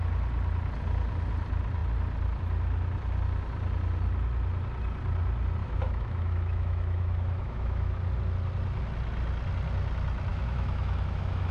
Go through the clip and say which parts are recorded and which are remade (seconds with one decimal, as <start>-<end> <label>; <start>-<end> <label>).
0.0-5.6 recorded; 5.6-8.0 remade; 8.0-10.3 recorded; 10.3-11.5 remade